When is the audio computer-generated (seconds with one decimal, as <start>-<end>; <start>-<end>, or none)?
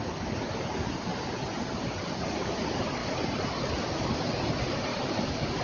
1.1-2.5; 4.9-5.6